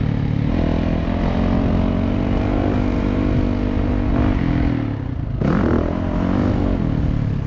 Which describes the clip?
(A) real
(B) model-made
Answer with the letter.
A